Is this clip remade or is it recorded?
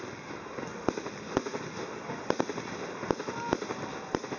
recorded